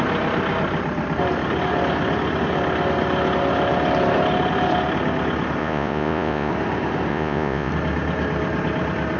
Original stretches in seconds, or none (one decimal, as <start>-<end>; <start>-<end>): 0.0-5.6; 6.5-7.1; 7.7-9.2